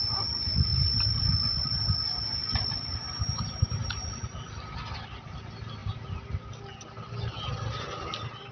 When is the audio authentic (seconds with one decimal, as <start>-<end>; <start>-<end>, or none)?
0.0-8.5